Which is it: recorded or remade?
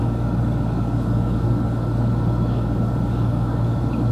remade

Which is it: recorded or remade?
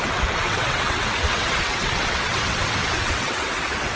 remade